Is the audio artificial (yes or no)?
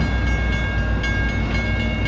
no